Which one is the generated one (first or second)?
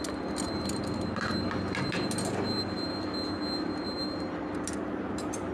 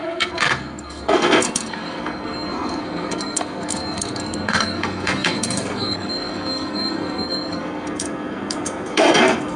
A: second